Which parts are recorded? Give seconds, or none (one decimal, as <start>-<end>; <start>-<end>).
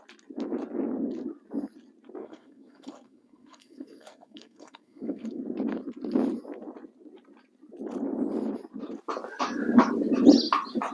0.0-2.2; 5.4-10.9